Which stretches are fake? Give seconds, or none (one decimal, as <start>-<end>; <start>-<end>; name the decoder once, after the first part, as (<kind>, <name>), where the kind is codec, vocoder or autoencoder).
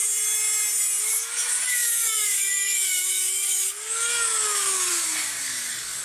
1.0-6.0 (codec, DAC)